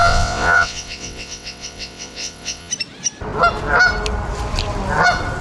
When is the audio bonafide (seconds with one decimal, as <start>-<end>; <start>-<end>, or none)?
2.7-5.4